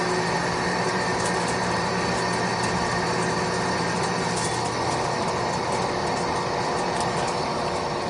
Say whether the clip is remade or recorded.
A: recorded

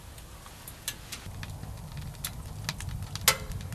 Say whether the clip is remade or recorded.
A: recorded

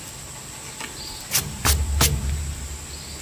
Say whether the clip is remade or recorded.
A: recorded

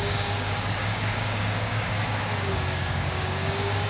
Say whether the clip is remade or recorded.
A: remade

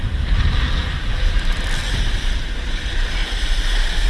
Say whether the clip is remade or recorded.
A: recorded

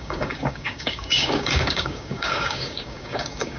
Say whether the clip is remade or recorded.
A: remade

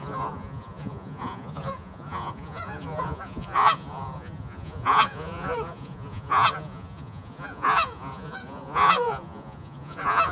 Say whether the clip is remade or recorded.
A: remade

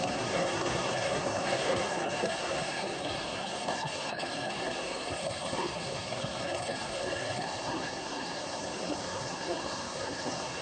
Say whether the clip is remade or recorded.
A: remade